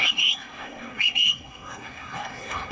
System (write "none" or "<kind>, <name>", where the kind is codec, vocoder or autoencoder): codec, SNAC